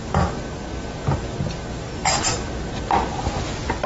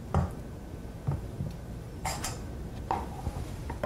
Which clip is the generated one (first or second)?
second